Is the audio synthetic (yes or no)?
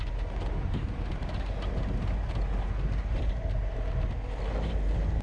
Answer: no